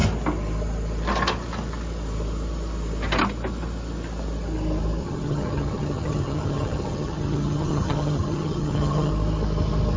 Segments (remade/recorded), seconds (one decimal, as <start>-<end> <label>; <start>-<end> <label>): 0.0-5.0 recorded; 5.0-9.1 remade; 9.1-10.0 recorded